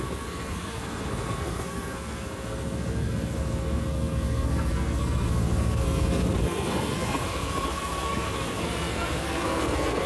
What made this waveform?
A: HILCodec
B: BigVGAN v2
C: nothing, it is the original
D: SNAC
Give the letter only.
D